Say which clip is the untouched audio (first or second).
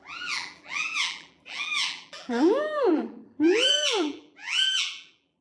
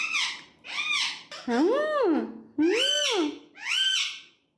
second